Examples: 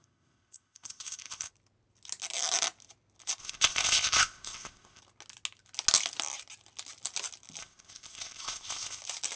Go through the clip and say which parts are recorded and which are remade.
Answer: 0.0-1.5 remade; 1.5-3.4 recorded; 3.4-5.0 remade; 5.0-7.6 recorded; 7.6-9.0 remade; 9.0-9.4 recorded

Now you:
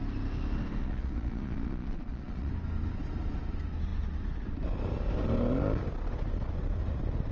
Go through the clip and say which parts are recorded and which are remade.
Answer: 0.0-0.8 recorded; 0.8-2.5 remade; 2.5-7.3 recorded

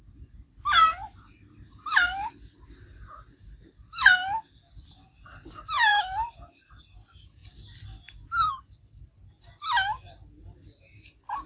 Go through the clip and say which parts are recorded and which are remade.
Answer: 0.0-11.5 recorded

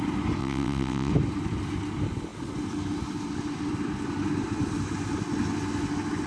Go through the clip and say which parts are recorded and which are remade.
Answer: 0.0-0.4 recorded; 0.4-1.1 remade; 1.1-6.3 recorded

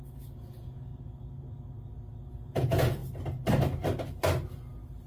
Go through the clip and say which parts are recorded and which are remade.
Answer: 0.0-0.9 remade; 0.9-2.3 recorded; 2.3-3.0 remade; 3.0-5.1 recorded

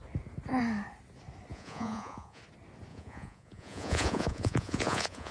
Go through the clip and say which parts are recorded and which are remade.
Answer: 0.0-1.5 recorded; 1.5-2.4 remade; 2.4-2.9 recorded; 2.9-5.3 remade

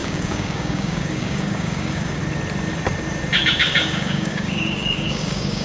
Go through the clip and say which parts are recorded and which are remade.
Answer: 0.0-2.2 remade; 2.2-3.6 recorded; 3.6-5.6 remade

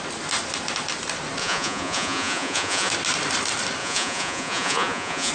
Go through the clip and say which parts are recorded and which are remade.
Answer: 0.0-1.4 recorded; 1.4-2.9 remade; 2.9-3.8 recorded; 3.8-5.3 remade